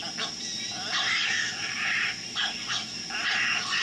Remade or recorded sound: recorded